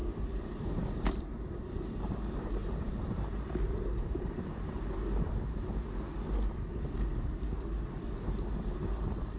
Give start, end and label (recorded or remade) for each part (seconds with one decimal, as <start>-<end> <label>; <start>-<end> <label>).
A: 0.0-1.2 remade; 1.2-2.6 recorded; 2.6-4.4 remade; 4.4-7.1 recorded; 7.1-8.0 remade; 8.0-9.4 recorded